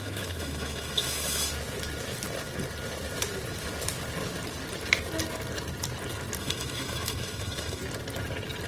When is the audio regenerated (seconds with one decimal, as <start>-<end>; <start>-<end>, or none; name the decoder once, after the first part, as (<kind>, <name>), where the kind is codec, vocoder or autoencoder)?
0.0-1.5 (autoencoder, DAC-VAE); 6.4-7.8